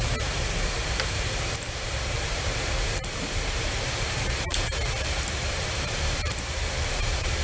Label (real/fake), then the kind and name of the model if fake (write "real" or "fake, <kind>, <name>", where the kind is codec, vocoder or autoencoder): fake, vocoder, BigVGAN v2